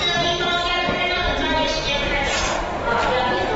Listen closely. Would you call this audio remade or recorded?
recorded